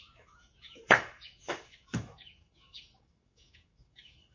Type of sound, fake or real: fake